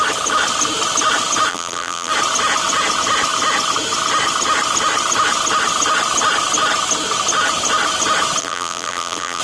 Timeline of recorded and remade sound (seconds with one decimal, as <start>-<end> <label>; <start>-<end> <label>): 0.0-1.5 recorded; 1.5-2.1 remade; 2.1-8.4 recorded; 8.4-9.4 remade